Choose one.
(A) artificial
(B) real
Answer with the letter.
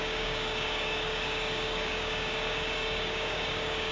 A